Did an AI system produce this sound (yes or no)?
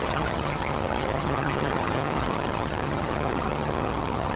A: yes